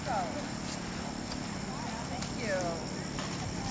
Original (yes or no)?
yes